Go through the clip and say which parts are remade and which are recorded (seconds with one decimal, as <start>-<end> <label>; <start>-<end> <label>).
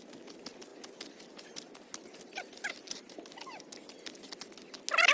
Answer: 0.0-5.1 recorded